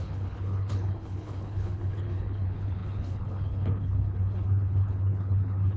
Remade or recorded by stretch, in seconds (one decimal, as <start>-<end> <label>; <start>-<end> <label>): 0.0-5.8 remade